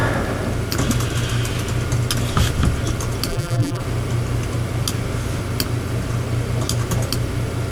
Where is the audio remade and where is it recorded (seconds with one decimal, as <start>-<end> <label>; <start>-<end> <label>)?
0.0-3.3 recorded; 3.3-3.8 remade; 3.8-7.7 recorded